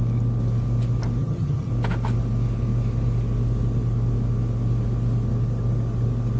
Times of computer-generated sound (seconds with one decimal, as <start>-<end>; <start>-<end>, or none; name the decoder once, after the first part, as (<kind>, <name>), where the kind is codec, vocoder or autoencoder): 1.2-1.7 (vocoder, HiFi-GAN)